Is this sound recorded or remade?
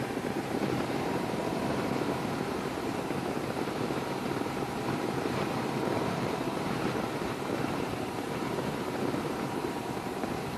remade